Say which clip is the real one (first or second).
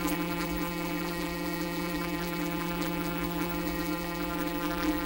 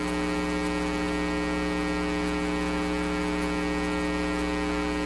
second